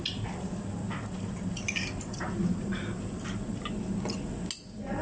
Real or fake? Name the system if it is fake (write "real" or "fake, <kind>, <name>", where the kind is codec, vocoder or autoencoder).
real